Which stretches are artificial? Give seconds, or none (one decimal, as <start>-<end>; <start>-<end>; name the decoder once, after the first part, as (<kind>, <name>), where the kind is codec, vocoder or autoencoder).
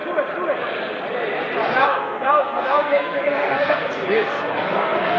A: 1.8-5.2 (codec, SNAC)